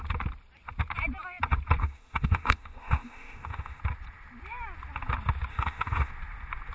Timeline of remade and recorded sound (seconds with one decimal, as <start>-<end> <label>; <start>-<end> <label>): 0.0-1.8 recorded; 1.8-3.8 remade; 3.8-5.5 recorded; 5.5-6.1 remade; 6.1-6.7 recorded